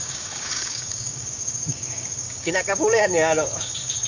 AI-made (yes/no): yes